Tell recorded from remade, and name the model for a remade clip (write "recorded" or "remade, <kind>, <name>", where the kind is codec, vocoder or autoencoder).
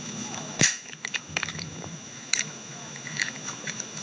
remade, autoencoder, DAC-VAE